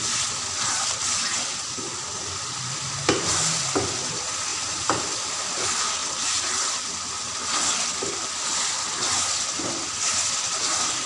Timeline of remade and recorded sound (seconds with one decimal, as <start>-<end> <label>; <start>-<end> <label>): 0.0-4.5 recorded; 4.5-5.5 remade; 5.5-6.0 recorded; 6.0-6.9 remade; 6.9-11.1 recorded